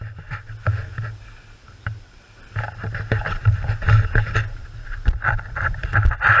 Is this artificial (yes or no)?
no